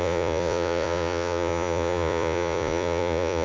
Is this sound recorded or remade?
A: remade